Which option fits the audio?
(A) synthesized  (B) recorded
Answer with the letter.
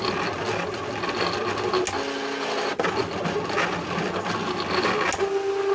B